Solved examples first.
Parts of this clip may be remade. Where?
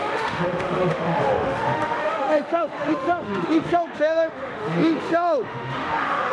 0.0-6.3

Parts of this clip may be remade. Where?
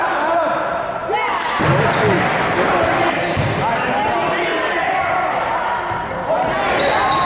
none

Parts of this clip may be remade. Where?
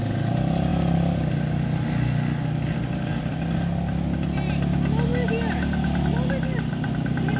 none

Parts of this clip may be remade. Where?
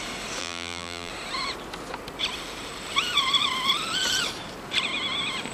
0.4-1.1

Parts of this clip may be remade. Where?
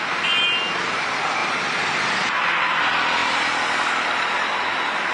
none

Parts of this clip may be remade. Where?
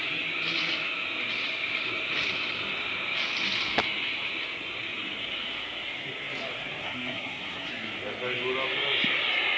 6.8-7.7